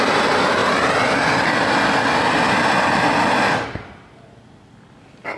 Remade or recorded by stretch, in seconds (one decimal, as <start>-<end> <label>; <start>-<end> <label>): 0.0-5.4 recorded